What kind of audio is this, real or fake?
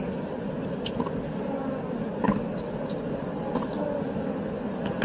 real